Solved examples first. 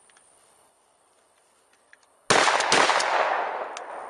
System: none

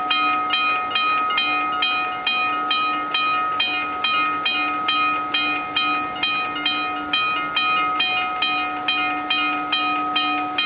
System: none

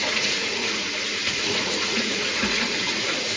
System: vocoder, Vocos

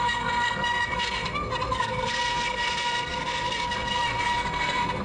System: codec, SNAC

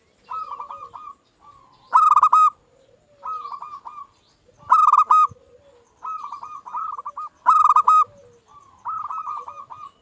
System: none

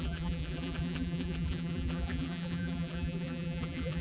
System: vocoder, BigVGAN v2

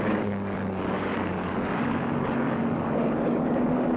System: codec, DAC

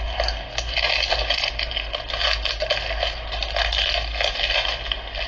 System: none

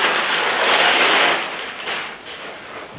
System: none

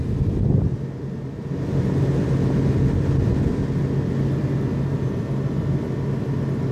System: none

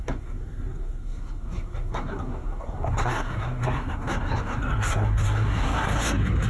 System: codec, SNAC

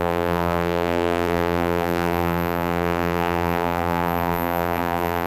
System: vocoder, BigVGAN v2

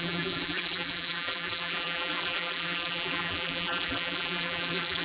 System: vocoder, BigVGAN v2